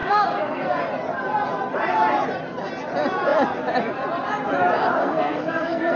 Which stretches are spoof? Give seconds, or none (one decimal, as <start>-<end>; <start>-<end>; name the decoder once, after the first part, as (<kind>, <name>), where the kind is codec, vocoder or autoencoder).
0.0-0.8 (codec, SNAC); 5.0-6.0